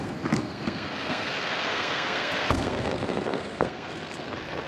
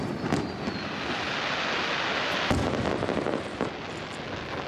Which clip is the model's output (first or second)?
first